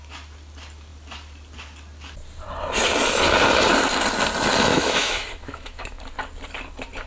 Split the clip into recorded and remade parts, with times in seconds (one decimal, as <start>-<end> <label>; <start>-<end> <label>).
0.0-4.7 recorded; 4.7-6.0 remade; 6.0-7.1 recorded